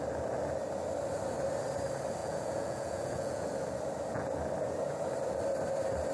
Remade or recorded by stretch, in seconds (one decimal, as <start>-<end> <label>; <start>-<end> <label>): 0.0-2.2 recorded; 2.2-3.5 remade; 3.5-6.1 recorded